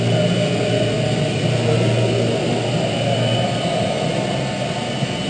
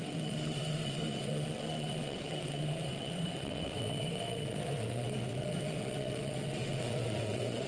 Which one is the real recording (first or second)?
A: first